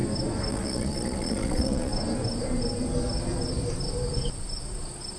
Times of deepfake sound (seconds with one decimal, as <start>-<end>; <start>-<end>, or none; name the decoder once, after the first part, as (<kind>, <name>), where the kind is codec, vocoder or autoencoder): 0.5-1.9 (vocoder, Vocos)